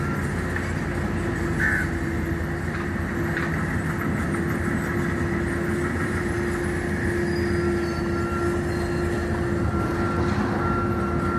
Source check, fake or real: real